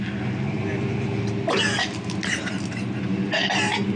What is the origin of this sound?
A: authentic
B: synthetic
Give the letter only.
A